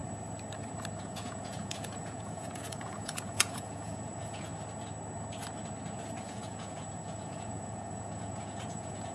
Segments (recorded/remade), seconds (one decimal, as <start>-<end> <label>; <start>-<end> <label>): 0.0-1.0 recorded; 1.0-4.5 remade; 4.5-6.3 recorded; 6.3-9.1 remade